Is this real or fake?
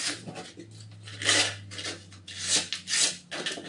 real